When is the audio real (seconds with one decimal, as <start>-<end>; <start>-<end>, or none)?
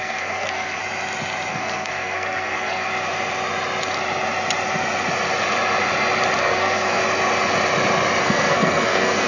0.8-1.5; 2.9-6.4; 7.0-8.2